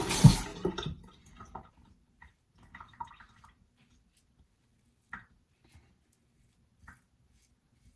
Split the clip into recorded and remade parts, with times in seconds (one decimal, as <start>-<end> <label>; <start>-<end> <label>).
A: 0.0-8.0 recorded